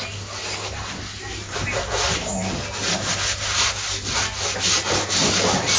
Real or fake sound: real